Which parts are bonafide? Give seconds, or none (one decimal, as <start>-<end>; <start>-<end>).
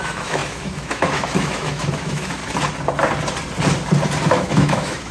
2.4-4.3